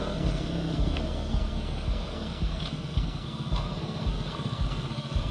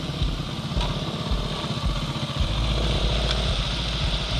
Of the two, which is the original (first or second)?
second